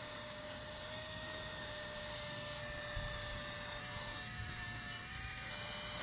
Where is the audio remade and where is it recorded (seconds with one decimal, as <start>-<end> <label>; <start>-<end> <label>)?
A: 0.0-2.6 remade; 2.6-3.8 recorded; 3.8-5.5 remade; 5.5-6.0 recorded